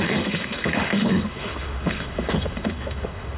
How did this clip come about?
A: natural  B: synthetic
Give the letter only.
B